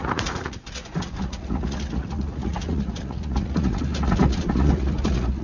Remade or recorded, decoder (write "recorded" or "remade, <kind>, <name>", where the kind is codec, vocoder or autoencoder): remade, vocoder, Vocos